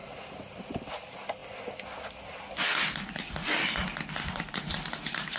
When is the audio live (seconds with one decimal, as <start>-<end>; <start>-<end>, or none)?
0.0-5.4